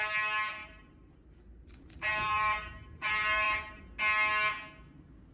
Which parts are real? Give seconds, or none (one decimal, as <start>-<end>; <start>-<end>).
0.0-0.6; 3.8-5.3